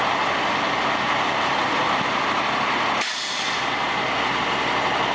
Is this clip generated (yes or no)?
no